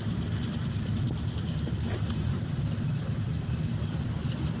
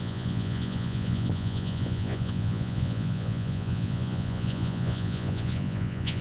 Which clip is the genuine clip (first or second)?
first